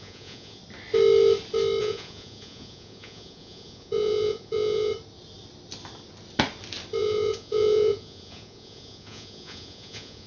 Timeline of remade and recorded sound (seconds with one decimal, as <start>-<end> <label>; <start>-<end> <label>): 0.0-0.6 remade; 0.6-1.8 recorded; 1.8-4.9 remade; 4.9-7.0 recorded; 7.0-10.3 remade